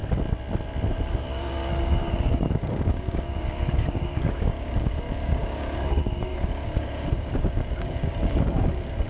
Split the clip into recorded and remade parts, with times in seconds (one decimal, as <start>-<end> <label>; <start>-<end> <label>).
0.0-0.9 recorded; 0.9-9.1 remade